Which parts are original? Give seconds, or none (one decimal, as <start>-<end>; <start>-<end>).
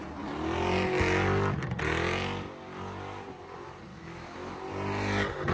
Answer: 0.0-3.9; 4.5-5.5